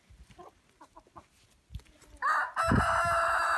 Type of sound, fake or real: real